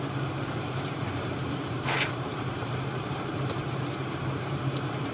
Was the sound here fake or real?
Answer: fake